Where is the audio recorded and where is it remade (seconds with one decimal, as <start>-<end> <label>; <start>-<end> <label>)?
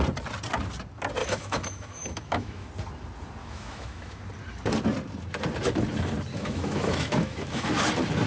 0.0-1.2 recorded; 1.2-2.7 remade; 2.7-3.4 recorded; 3.4-4.2 remade; 4.2-6.3 recorded; 6.3-7.7 remade; 7.7-8.3 recorded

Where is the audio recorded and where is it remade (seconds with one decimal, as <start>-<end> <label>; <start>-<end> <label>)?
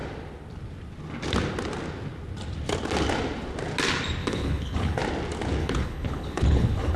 0.0-4.2 recorded; 4.2-5.0 remade; 5.0-5.6 recorded; 5.6-7.0 remade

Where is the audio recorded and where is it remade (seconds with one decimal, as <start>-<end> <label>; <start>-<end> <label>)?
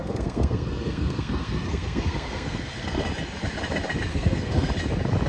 0.0-3.0 remade; 3.0-4.1 recorded; 4.1-4.7 remade; 4.7-5.3 recorded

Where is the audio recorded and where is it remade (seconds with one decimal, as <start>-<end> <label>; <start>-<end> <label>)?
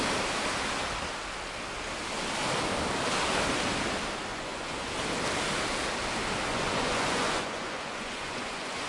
0.0-4.3 recorded; 4.3-4.9 remade; 4.9-6.5 recorded; 6.5-8.9 remade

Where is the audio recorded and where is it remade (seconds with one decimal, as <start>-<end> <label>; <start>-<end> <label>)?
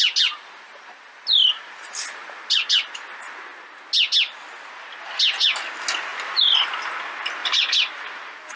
0.0-6.1 recorded; 6.1-6.7 remade; 6.7-7.4 recorded; 7.4-7.9 remade; 7.9-8.6 recorded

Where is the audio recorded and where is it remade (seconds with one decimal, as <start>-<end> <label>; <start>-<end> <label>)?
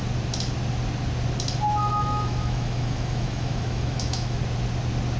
0.0-1.8 recorded; 1.8-4.4 remade; 4.4-5.2 recorded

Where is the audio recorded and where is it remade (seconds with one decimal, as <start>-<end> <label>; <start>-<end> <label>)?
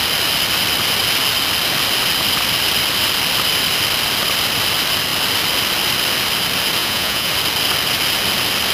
0.0-6.8 recorded; 6.8-7.3 remade; 7.3-8.7 recorded